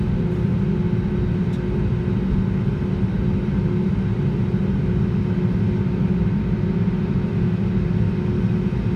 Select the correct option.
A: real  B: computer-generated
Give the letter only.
A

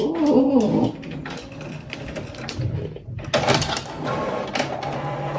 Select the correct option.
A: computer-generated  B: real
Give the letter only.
B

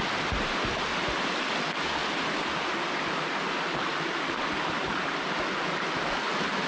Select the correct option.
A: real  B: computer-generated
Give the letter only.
A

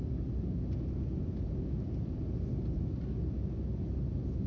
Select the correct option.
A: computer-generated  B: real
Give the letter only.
B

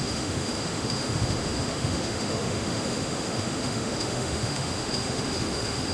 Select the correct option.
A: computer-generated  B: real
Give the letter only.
A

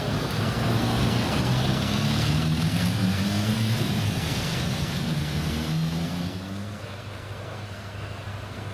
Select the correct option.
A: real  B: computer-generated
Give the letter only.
B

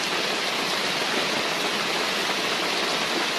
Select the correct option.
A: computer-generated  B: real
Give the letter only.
B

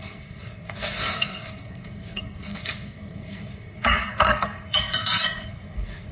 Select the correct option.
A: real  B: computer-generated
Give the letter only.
B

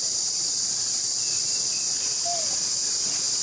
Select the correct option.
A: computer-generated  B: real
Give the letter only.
B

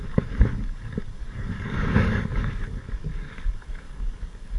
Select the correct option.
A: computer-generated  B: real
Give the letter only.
A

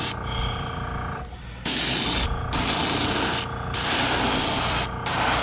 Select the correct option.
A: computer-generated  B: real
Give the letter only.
B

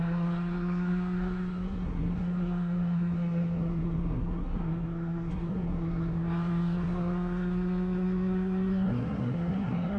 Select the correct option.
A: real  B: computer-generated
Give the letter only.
B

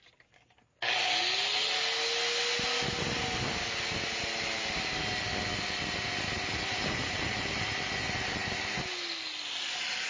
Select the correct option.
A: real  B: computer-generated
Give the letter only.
A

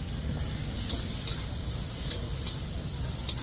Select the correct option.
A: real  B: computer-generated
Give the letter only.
A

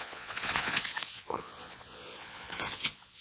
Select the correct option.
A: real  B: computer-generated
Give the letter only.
B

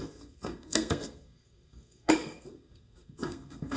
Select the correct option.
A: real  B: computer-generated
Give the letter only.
B